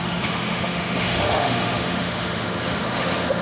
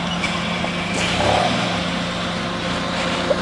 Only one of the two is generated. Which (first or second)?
first